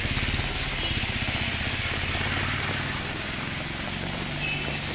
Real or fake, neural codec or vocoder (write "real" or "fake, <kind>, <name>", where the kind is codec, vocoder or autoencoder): real